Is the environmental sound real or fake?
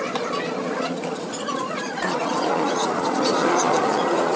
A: fake